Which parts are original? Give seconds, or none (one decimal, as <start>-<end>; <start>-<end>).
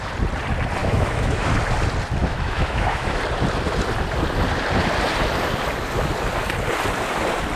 0.0-0.8; 1.5-2.2; 3.2-7.6